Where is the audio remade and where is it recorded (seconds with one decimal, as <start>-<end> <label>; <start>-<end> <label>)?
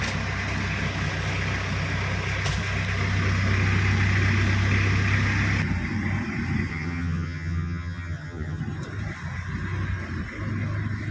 0.0-6.7 recorded; 6.7-8.6 remade; 8.6-11.1 recorded